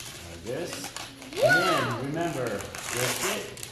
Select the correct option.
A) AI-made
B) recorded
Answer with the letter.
B